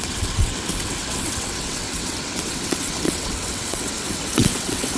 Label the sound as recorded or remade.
remade